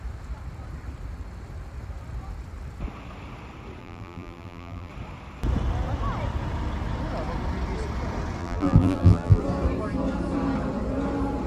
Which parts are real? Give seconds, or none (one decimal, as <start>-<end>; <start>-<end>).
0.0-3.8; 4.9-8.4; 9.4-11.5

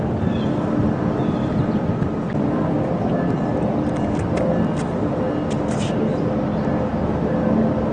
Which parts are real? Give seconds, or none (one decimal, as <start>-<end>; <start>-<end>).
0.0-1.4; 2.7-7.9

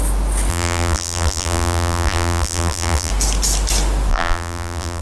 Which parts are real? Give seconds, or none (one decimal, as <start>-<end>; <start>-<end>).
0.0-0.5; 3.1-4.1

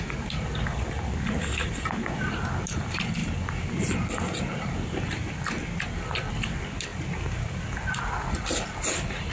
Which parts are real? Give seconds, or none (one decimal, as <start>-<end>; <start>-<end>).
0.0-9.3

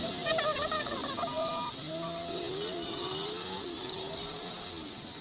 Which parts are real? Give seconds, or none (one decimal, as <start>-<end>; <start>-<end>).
0.0-5.2

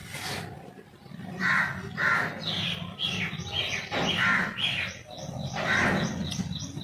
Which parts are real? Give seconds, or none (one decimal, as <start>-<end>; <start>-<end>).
0.0-6.8

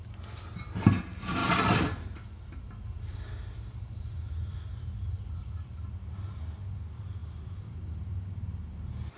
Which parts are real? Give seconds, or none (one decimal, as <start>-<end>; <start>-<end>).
0.0-1.4; 5.9-7.2; 7.9-9.2

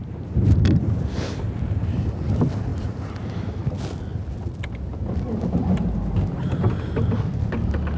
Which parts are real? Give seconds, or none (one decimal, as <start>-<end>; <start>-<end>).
0.0-2.7; 3.2-8.0